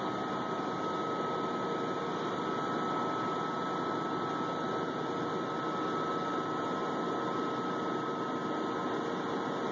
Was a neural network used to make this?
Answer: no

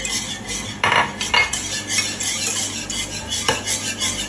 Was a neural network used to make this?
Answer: no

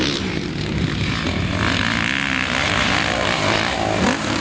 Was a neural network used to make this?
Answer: no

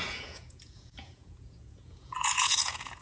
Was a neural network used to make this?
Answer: yes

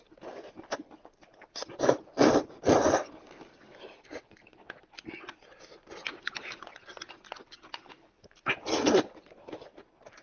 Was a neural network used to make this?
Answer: no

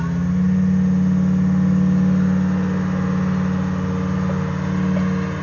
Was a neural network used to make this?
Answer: no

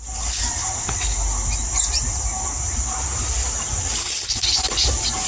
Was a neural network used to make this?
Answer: no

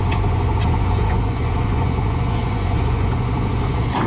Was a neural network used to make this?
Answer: yes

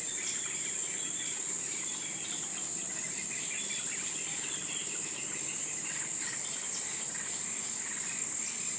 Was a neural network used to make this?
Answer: no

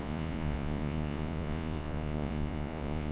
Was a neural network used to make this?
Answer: yes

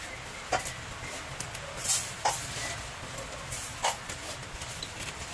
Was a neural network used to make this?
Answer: no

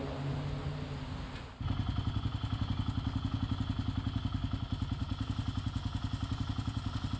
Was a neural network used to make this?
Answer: no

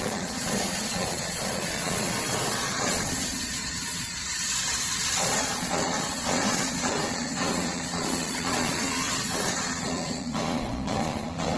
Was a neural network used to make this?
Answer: yes